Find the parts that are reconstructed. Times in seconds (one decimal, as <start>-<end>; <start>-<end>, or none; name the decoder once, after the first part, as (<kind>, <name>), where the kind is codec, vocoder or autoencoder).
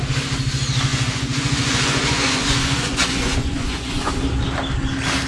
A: 0.9-4.1 (vocoder, Vocos)